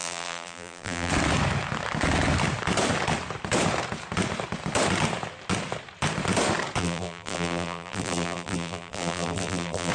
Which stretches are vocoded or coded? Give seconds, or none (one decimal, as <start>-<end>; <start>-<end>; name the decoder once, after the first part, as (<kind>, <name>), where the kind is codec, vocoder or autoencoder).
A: 0.0-1.1 (vocoder, BigVGAN v2); 6.8-9.9